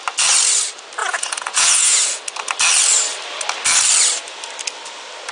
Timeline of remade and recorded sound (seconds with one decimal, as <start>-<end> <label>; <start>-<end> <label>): 0.0-1.0 recorded; 1.0-2.2 remade; 2.2-5.3 recorded